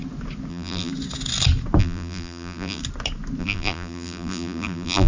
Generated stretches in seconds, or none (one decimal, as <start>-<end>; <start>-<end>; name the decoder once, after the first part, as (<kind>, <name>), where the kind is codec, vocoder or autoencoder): 0.5-0.9 (vocoder, BigVGAN v2); 1.8-2.8; 3.4-5.1